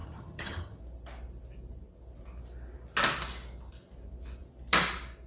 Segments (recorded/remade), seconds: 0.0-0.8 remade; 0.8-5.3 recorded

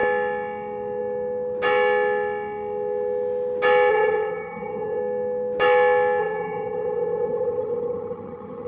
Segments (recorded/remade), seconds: 0.0-3.9 recorded; 3.9-5.0 remade; 5.0-6.2 recorded; 6.2-8.7 remade

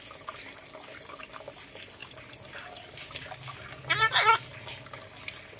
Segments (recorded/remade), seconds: 0.0-5.6 recorded

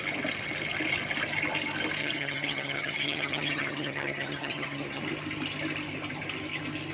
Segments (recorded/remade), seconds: 0.0-2.0 recorded; 2.0-5.0 remade; 5.0-6.9 recorded